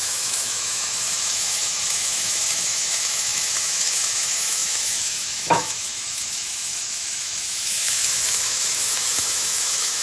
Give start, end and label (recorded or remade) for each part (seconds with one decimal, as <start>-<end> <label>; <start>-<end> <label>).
0.0-10.0 remade